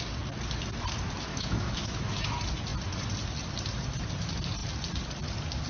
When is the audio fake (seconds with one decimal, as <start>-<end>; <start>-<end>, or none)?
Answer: 1.3-2.3